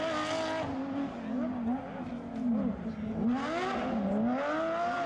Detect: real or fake real